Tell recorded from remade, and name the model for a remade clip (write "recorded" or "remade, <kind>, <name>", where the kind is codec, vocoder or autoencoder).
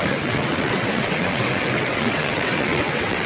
remade, vocoder, WaveNeXt